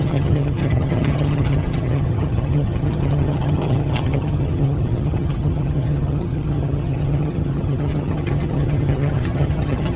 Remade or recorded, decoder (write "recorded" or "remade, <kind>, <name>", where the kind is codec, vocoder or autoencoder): remade, vocoder, HiFi-GAN